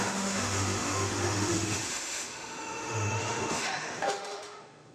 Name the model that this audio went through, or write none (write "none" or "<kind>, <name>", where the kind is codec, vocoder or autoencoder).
autoencoder, DAC-VAE